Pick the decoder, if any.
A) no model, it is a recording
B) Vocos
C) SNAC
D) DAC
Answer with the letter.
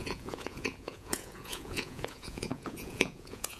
B